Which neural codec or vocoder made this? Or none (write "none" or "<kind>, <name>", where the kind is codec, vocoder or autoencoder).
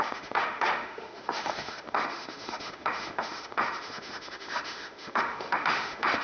autoencoder, DAC-VAE